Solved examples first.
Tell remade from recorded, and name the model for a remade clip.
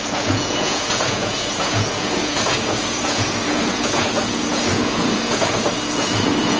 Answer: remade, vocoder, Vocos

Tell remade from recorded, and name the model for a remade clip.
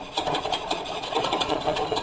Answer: remade, vocoder, Vocos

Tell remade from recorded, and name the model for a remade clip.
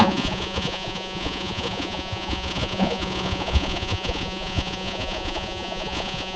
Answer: remade, vocoder, Vocos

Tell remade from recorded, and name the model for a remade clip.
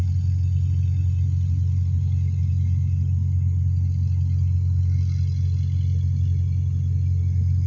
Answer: recorded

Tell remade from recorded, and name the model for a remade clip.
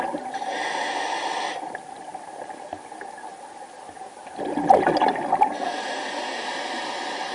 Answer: recorded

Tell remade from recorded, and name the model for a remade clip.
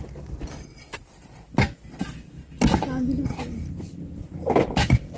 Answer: recorded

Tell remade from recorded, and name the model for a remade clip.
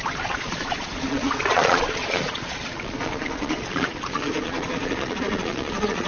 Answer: remade, vocoder, Vocos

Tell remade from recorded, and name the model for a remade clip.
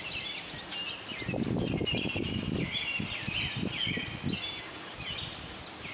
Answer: recorded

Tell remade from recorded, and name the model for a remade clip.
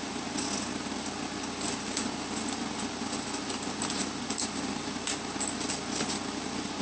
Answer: recorded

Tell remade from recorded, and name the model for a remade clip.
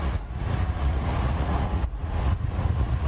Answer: remade, vocoder, Vocos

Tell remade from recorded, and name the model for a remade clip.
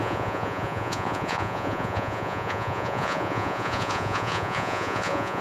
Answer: remade, vocoder, Vocos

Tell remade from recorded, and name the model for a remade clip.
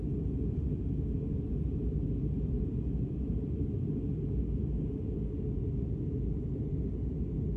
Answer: recorded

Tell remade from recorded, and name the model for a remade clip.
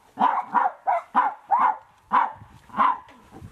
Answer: recorded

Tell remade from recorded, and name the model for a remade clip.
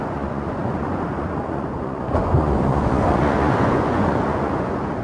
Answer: remade, vocoder, Vocos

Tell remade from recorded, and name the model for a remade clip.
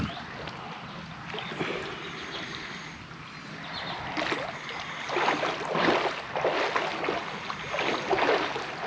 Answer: recorded